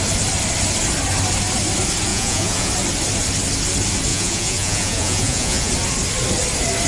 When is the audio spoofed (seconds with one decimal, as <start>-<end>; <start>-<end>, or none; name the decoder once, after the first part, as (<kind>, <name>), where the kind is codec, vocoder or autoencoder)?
2.1-2.7 (vocoder, Vocos); 4.1-5.7